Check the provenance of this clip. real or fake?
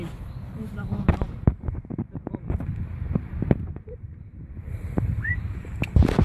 fake